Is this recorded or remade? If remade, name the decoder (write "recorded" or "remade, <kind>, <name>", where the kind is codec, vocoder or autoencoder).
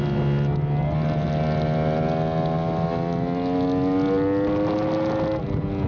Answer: recorded